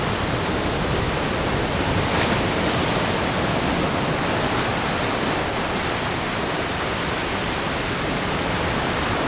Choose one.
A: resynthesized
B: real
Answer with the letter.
B